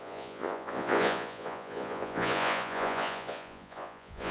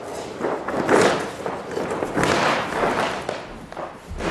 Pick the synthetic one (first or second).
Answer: first